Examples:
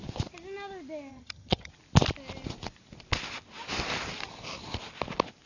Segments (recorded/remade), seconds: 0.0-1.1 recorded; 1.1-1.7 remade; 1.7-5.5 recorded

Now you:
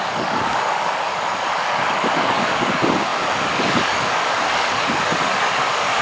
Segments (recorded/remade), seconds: 0.0-6.0 remade

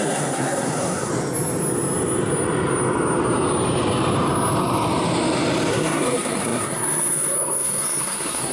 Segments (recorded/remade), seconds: 0.0-1.1 remade; 1.1-5.7 recorded; 5.7-8.5 remade

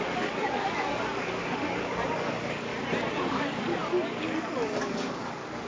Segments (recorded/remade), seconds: 0.0-2.7 remade; 2.7-3.2 recorded; 3.2-5.7 remade

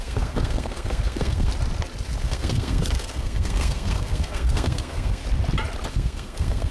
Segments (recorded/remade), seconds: 0.0-1.5 remade; 1.5-2.2 recorded; 2.2-5.2 remade; 5.2-5.9 recorded; 5.9-6.7 remade

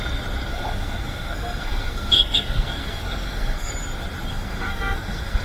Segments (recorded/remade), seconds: 0.0-0.5 recorded; 0.5-3.7 remade; 3.7-4.3 recorded; 4.3-5.4 remade

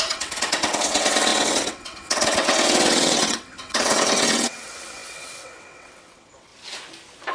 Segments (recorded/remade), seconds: 0.0-6.5 remade; 6.5-7.3 recorded